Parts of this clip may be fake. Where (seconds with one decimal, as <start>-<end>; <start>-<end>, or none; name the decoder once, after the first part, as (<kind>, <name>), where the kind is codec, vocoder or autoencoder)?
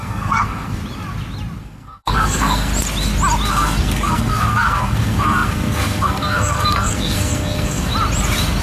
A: 0.0-0.8 (codec, SNAC); 1.6-2.7; 3.5-7.9